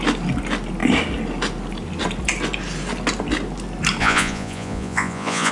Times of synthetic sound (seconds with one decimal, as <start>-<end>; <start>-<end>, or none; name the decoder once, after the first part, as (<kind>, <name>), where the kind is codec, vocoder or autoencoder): 4.0-5.5 (vocoder, Vocos)